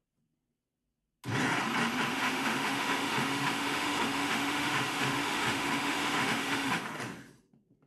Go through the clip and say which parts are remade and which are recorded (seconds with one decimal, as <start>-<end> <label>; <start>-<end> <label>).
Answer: 0.0-2.1 recorded; 2.1-6.8 remade; 6.8-7.9 recorded